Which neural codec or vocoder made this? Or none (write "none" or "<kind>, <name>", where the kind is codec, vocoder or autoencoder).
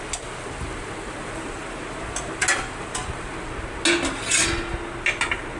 none